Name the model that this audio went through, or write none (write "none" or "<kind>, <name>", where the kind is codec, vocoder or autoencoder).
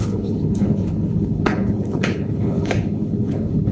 codec, HILCodec